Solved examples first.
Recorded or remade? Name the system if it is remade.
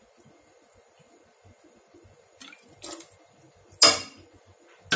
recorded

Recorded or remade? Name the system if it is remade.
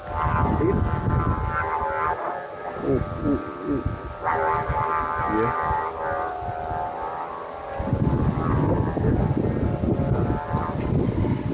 recorded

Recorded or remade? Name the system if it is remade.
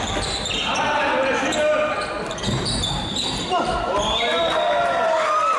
recorded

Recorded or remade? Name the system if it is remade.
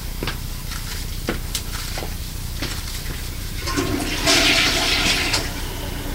recorded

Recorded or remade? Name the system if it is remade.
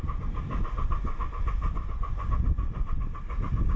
recorded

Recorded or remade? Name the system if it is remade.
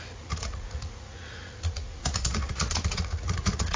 remade, vocoder, Vocos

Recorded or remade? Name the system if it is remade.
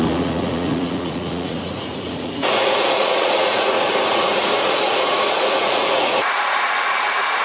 remade, vocoder, Vocos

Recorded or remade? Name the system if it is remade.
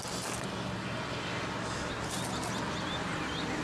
recorded